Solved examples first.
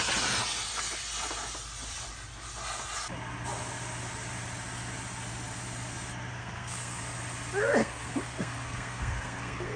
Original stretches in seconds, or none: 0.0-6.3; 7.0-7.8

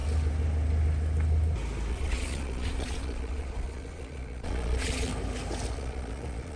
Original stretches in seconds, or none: 0.0-1.9; 5.1-5.7

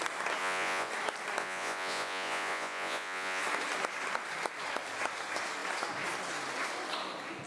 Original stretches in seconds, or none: 0.0-0.4; 0.9-1.4; 3.4-7.5

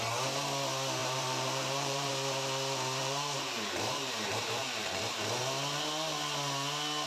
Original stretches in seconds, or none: 0.0-1.0; 2.1-3.0; 5.4-7.1

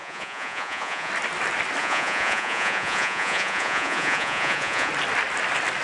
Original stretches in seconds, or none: 1.1-1.8; 4.9-5.8